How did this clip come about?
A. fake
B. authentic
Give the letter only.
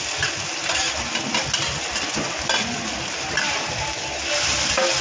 B